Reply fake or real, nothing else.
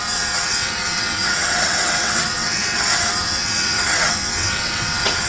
fake